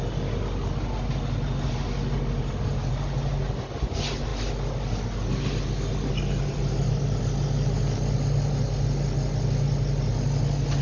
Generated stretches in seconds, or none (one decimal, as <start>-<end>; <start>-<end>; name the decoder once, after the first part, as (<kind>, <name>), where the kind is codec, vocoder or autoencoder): none